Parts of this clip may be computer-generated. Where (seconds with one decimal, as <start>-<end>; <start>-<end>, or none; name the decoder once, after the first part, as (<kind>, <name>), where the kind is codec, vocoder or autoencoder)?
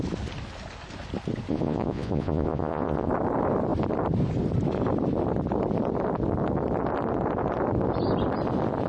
1.5-3.1 (vocoder, Vocos)